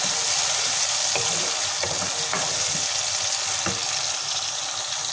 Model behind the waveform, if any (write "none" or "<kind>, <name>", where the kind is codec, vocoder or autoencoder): none